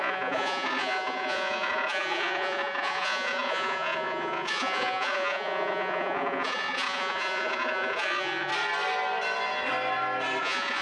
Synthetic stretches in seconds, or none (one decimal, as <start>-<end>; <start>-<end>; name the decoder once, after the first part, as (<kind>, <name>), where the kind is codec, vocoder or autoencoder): 0.0-8.5 (vocoder, Vocos); 10.4-10.8